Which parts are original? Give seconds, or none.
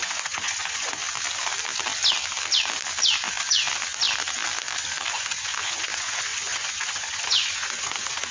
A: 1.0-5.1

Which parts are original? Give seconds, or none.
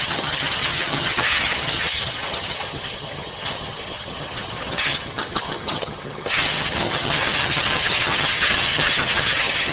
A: none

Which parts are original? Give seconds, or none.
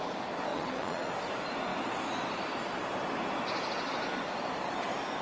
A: 0.0-0.5; 1.0-5.2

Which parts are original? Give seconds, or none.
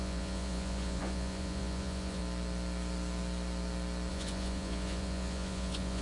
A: 2.2-4.1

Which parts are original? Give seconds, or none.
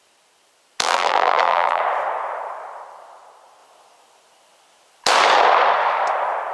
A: 0.0-0.8; 1.8-6.5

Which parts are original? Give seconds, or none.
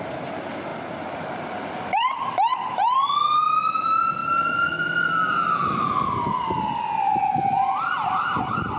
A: 2.5-3.3; 4.2-8.4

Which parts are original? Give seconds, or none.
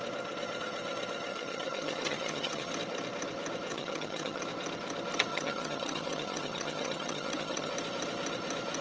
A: 0.0-1.3; 2.7-3.7; 4.4-5.3; 7.7-8.8